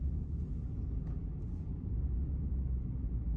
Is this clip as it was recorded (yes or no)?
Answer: yes